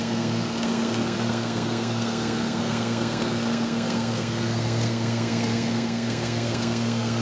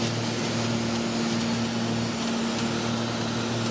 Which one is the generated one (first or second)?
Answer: first